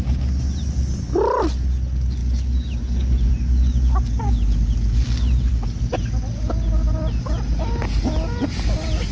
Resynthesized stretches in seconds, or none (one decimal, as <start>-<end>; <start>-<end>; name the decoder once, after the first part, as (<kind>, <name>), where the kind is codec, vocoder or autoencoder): none